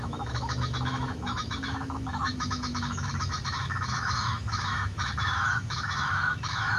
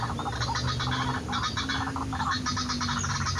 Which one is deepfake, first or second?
first